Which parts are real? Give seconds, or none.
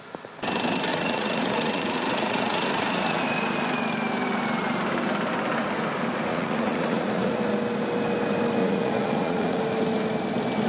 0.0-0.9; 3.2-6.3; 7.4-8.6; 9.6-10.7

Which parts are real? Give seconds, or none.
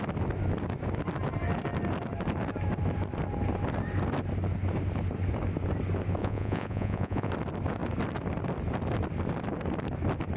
0.0-6.2; 7.3-10.4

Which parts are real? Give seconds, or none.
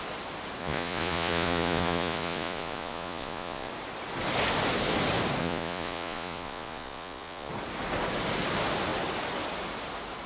0.0-0.6; 3.7-5.4; 7.5-10.3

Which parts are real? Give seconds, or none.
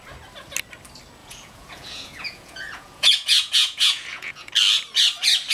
0.0-1.2; 4.5-5.5